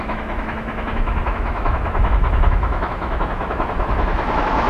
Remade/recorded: remade